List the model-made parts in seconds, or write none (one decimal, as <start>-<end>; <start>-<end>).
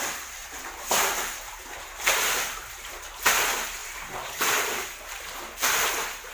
0.4-1.5; 3.8-5.2